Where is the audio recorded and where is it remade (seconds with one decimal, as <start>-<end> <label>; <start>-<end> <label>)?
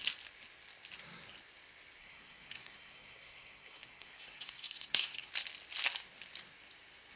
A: 0.0-2.0 recorded; 2.0-5.3 remade; 5.3-7.2 recorded